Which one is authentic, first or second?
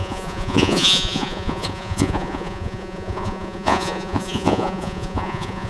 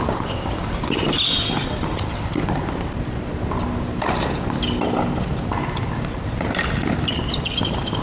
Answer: second